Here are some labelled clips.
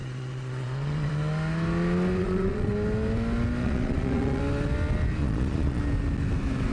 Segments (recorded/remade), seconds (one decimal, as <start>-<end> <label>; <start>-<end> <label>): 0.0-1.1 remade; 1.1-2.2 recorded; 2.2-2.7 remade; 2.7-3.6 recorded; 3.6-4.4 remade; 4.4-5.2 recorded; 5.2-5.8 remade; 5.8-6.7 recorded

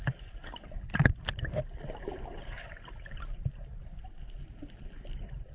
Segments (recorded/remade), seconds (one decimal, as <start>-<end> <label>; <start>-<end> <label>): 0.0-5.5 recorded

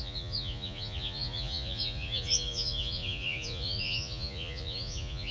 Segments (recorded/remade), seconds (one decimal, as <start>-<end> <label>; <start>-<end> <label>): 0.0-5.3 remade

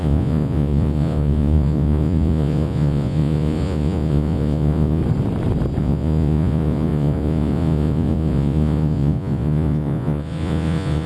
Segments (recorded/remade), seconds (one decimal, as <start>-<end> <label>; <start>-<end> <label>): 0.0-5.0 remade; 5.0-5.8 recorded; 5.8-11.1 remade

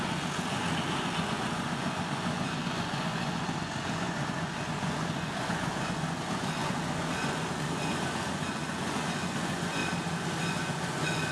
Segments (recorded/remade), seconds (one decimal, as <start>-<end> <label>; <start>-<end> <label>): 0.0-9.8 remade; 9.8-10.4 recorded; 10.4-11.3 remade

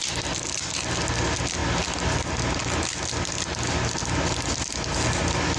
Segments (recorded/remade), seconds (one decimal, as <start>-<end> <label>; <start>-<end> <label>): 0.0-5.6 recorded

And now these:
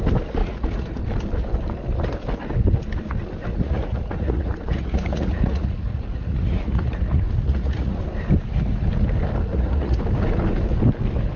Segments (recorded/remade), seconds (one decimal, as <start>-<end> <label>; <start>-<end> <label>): 0.0-0.4 recorded; 0.4-1.0 remade; 1.0-3.5 recorded; 3.5-8.0 remade; 8.0-9.5 recorded; 9.5-10.0 remade; 10.0-11.4 recorded

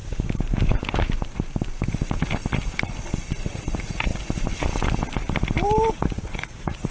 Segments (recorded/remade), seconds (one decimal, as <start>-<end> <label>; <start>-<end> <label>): 0.0-3.5 recorded; 3.5-4.1 remade; 4.1-5.9 recorded; 5.9-6.9 remade